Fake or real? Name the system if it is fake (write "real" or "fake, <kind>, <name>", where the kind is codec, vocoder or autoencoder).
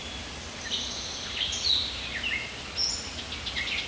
real